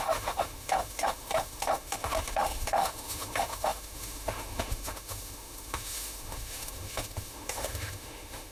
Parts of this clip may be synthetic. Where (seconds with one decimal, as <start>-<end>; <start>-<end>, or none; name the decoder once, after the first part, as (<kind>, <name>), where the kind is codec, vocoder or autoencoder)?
0.0-8.5 (autoencoder, DAC-VAE)